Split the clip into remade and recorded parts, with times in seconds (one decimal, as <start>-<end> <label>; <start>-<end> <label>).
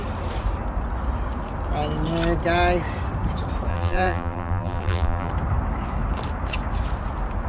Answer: 0.0-3.7 recorded; 3.7-5.3 remade; 5.3-7.5 recorded